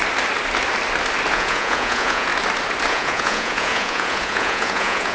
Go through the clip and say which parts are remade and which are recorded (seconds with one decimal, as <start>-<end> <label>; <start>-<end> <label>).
0.0-1.3 recorded; 1.3-2.3 remade; 2.3-2.9 recorded; 2.9-5.1 remade